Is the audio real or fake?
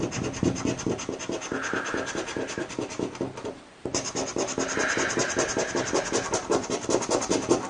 real